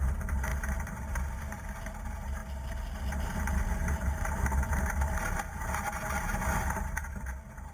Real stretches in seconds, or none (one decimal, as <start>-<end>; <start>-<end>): 2.4-3.1